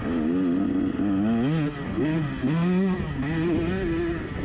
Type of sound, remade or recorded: recorded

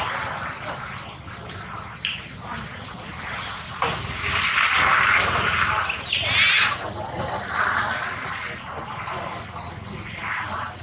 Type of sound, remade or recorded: recorded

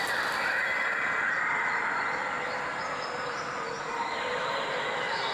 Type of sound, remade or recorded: recorded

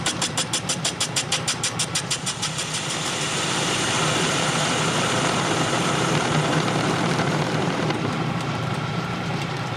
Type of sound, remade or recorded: remade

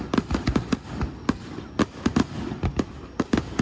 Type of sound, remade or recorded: recorded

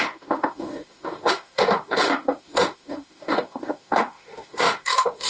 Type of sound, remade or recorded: remade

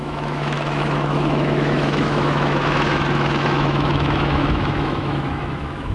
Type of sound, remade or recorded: remade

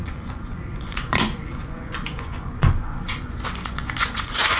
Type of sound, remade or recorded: remade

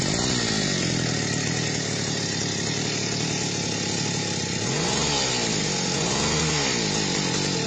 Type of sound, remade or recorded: recorded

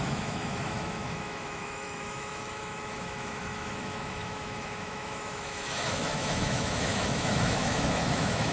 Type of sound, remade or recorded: remade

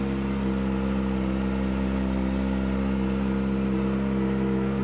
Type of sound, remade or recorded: recorded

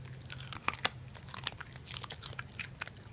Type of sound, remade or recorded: recorded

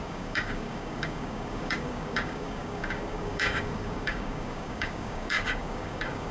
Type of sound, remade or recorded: remade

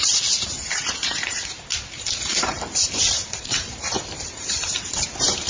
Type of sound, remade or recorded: remade